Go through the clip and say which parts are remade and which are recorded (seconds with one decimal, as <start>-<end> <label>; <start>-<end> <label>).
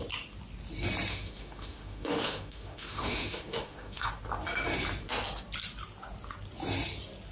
0.0-1.1 recorded; 1.1-4.1 remade; 4.1-7.3 recorded